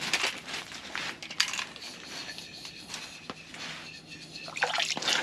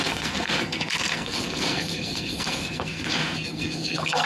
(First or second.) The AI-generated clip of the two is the second